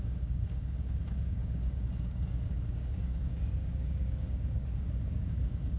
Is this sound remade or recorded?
remade